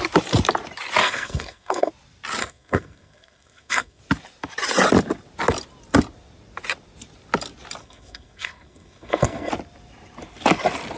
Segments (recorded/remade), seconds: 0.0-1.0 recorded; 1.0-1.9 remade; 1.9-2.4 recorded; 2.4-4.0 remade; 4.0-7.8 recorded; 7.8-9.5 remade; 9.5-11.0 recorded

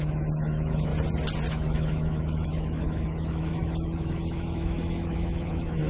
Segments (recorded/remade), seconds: 0.0-0.9 remade; 0.9-1.5 recorded; 1.5-5.9 remade

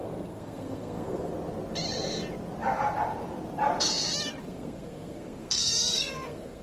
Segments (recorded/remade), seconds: 0.0-1.3 remade; 1.3-4.4 recorded; 4.4-6.6 remade

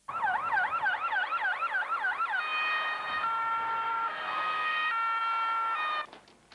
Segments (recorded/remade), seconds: 0.0-3.9 recorded; 3.9-4.9 remade; 4.9-6.5 recorded

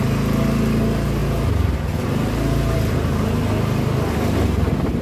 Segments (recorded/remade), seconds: 0.0-5.0 recorded

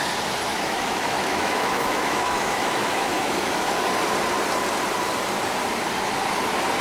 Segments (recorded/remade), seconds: 0.0-0.5 recorded; 0.5-3.7 remade; 3.7-6.8 recorded

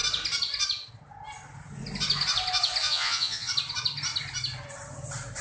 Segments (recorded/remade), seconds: 0.0-2.8 recorded; 2.8-3.5 remade; 3.5-5.4 recorded

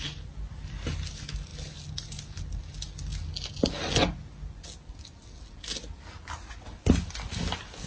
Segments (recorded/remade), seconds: 0.0-7.9 recorded